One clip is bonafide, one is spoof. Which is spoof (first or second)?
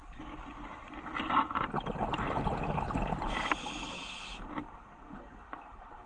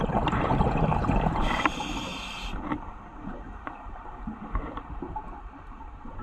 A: second